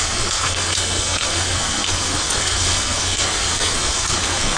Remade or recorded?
remade